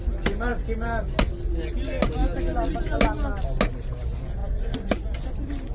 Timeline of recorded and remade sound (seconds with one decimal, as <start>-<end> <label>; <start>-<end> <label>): 0.0-5.7 recorded